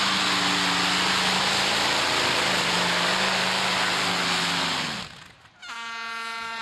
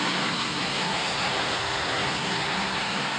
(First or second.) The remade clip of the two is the second